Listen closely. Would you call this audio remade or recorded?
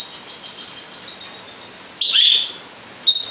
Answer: recorded